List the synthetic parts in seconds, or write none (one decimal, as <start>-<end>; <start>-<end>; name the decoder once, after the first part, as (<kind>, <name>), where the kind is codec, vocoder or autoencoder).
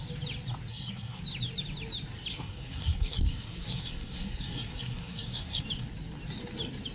0.7-1.2 (codec, SNAC); 2.3-5.6